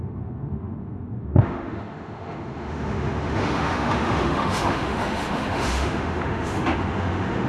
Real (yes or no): no